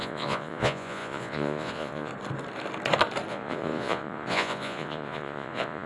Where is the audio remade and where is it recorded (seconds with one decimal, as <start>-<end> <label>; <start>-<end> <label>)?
0.0-2.1 remade; 2.1-3.3 recorded; 3.3-5.9 remade